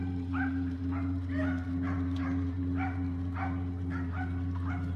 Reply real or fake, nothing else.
real